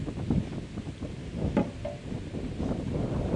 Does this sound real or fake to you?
real